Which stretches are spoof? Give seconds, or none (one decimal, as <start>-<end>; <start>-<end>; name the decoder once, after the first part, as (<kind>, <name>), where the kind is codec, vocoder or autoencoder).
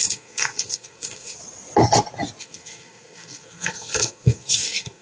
0.0-1.4 (codec, SNAC); 2.4-5.0